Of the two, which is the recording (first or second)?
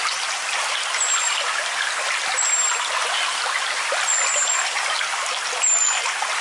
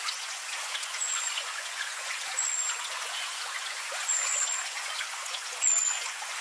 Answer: first